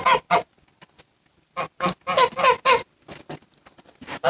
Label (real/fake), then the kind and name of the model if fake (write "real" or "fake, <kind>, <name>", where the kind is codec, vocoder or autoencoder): real